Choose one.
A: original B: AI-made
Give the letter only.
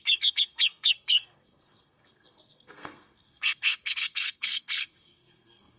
B